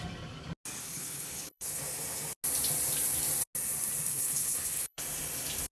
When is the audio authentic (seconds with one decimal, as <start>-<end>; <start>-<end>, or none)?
0.0-0.8; 1.8-4.1; 5.0-5.7